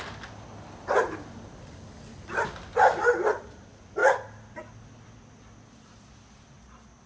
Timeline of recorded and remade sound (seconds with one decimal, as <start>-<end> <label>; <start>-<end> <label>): 0.0-7.1 recorded